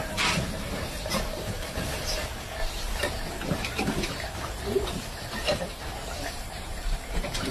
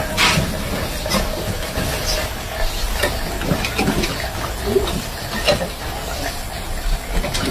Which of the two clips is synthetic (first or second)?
first